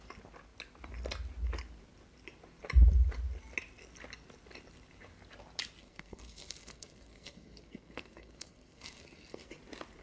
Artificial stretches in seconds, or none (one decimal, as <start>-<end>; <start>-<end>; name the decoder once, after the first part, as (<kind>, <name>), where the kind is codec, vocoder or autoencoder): 5.8-9.5 (codec, SNAC)